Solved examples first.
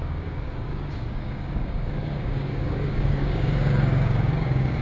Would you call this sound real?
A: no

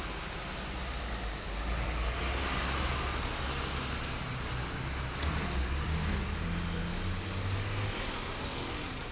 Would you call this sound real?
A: yes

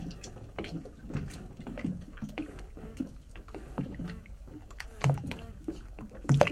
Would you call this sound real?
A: no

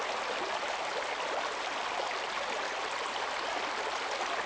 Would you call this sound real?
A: yes